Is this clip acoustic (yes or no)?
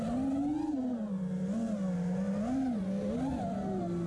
yes